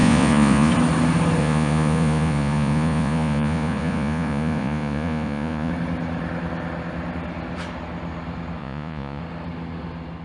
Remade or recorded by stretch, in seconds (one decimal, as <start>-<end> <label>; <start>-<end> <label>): 0.0-0.7 remade; 0.7-1.4 recorded; 1.4-5.7 remade; 5.7-8.6 recorded; 8.6-9.2 remade; 9.2-10.2 recorded